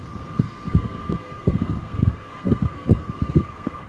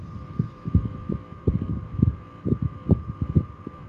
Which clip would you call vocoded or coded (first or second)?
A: first